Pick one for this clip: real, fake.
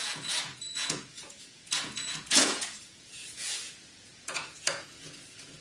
fake